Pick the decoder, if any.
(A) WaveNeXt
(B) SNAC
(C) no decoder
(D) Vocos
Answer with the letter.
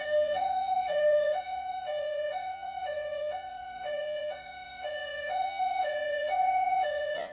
D